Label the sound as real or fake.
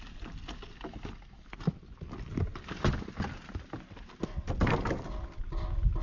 real